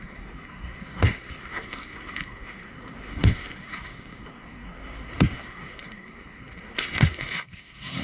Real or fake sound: fake